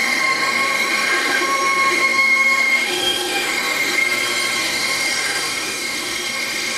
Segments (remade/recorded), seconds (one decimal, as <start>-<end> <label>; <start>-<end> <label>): 0.0-4.0 remade; 4.0-4.6 recorded; 4.6-6.8 remade